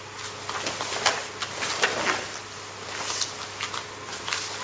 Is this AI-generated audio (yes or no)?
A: no